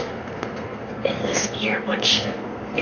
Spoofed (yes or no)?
yes